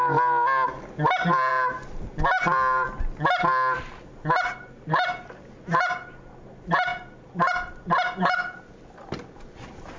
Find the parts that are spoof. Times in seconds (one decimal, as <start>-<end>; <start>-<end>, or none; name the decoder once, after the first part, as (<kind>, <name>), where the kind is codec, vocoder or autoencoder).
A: none